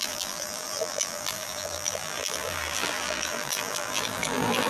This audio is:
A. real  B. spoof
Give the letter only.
B